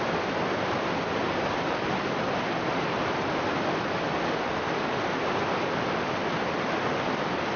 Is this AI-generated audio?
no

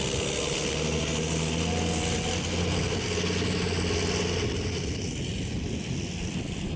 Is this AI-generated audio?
no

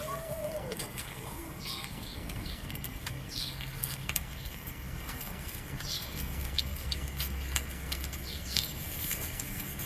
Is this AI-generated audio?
yes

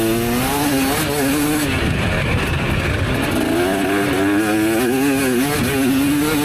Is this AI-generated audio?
no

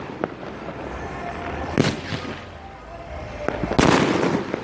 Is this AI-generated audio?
no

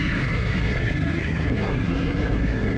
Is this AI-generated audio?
yes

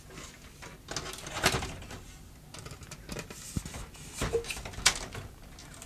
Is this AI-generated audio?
no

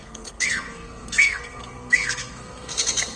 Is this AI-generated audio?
yes